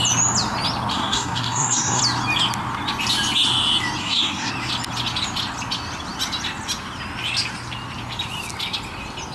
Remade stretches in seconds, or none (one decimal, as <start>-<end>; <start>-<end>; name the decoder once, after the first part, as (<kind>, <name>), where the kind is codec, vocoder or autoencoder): 0.9-2.0 (codec, SNAC); 4.0-4.5